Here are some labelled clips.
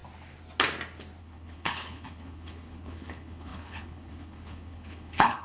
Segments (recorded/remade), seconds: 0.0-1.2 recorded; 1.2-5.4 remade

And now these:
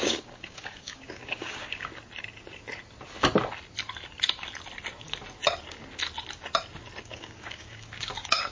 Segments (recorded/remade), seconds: 0.0-1.9 remade; 1.9-7.0 recorded; 7.0-8.5 remade

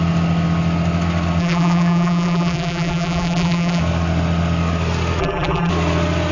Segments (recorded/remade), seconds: 0.0-1.4 recorded; 1.4-3.8 remade; 3.8-5.2 recorded; 5.2-5.7 remade; 5.7-6.3 recorded